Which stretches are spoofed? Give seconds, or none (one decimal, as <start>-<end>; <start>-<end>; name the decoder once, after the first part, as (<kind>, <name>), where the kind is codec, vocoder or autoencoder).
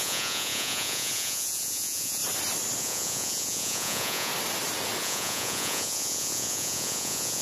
0.0-2.2 (vocoder, Vocos); 2.8-4.3; 5.0-7.4